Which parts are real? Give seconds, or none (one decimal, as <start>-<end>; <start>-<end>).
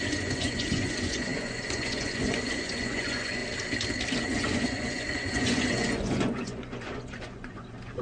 3.4-4.2